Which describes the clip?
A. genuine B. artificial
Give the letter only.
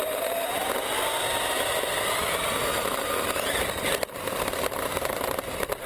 A